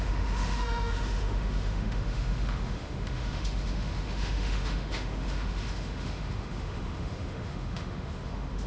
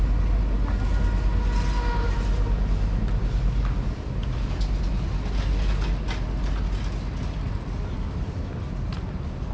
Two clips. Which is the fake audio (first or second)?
first